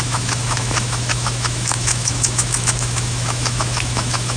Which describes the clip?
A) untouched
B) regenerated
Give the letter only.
B